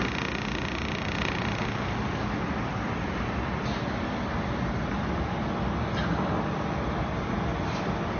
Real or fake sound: real